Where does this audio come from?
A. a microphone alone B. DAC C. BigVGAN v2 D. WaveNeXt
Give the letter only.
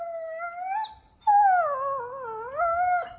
A